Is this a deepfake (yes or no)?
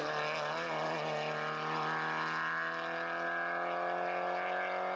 no